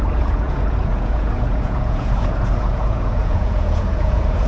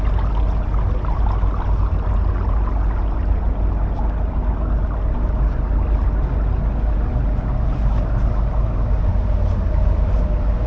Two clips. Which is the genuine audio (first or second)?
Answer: second